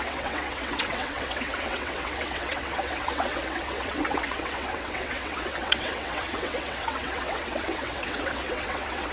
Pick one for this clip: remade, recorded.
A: remade